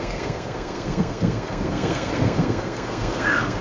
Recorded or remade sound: remade